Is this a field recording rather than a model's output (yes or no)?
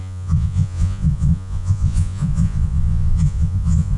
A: no